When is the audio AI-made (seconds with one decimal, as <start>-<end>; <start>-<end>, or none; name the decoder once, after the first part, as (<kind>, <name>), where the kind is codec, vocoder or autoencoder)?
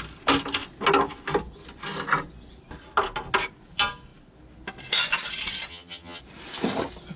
5.7-6.2 (vocoder, HiFi-GAN)